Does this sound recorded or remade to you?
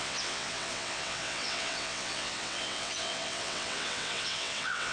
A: remade